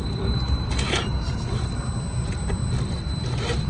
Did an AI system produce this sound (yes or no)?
no